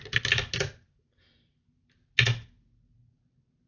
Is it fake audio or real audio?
real